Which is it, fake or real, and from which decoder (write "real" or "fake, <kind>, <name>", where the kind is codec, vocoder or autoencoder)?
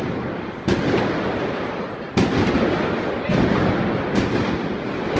real